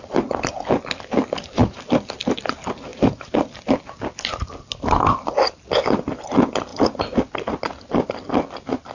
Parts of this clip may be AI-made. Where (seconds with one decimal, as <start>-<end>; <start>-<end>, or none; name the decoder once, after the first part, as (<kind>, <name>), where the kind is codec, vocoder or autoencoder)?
none